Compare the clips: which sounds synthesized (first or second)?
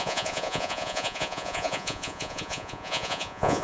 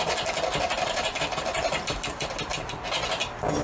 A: first